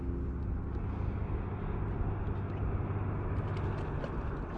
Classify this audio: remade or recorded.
recorded